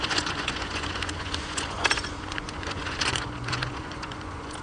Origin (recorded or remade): remade